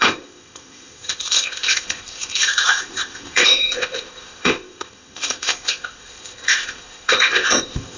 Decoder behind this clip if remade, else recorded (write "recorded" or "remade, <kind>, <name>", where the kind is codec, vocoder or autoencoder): remade, codec, ZipCodec